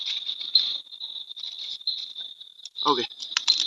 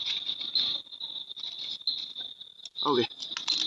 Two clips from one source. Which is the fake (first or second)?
first